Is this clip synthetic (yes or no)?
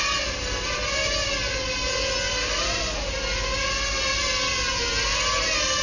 no